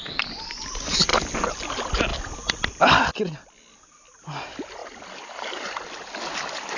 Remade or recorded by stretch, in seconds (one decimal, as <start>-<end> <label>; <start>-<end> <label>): 0.0-2.1 recorded; 2.1-3.1 remade; 3.1-4.8 recorded; 4.8-6.1 remade; 6.1-6.8 recorded